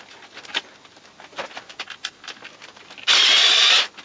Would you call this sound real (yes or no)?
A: yes